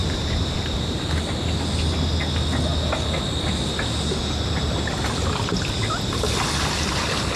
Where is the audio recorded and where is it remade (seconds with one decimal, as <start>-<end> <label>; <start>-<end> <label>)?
0.0-1.0 remade; 1.0-7.4 recorded